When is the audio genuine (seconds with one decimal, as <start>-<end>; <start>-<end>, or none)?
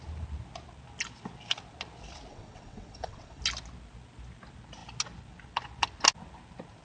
0.0-2.3; 3.4-6.8